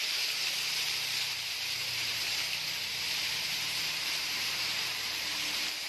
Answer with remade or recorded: remade